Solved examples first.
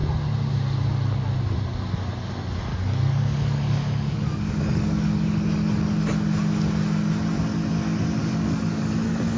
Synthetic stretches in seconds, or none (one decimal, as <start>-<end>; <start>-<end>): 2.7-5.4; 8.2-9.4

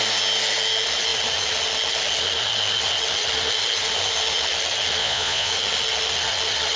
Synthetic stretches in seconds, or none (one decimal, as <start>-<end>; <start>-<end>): 5.0-5.5

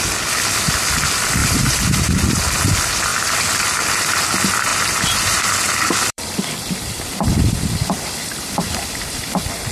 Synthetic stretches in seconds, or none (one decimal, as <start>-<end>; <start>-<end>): 1.4-2.1; 4.7-9.2

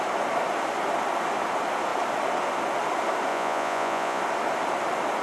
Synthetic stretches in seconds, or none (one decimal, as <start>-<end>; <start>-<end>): 3.3-4.2

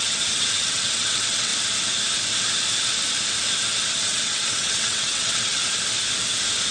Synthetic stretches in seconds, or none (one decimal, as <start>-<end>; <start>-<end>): 0.0-1.5; 4.0-5.6